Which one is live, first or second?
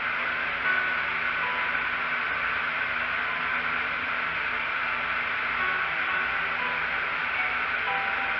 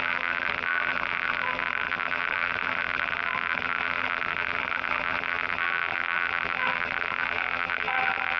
first